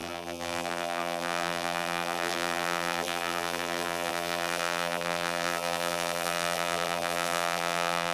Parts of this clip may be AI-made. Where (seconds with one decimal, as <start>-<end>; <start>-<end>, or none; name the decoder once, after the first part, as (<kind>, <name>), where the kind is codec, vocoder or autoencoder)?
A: 0.0-8.1 (vocoder, BigVGAN v2)